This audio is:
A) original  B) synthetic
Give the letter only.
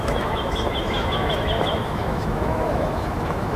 B